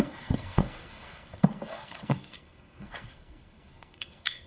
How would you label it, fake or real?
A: fake